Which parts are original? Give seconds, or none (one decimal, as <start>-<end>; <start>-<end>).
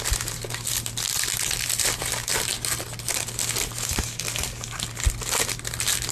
0.0-6.1